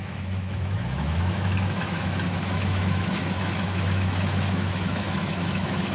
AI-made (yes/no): yes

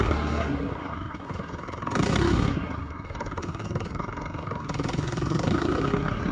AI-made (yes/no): yes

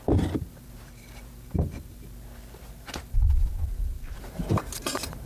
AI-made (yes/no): yes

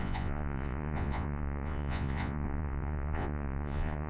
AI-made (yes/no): yes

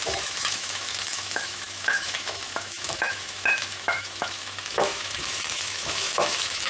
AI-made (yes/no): yes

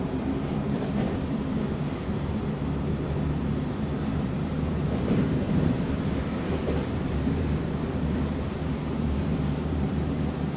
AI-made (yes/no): yes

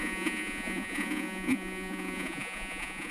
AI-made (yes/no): yes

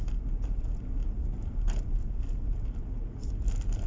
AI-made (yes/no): no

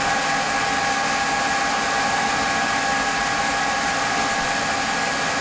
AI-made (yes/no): no